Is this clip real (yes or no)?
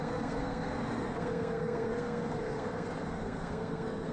no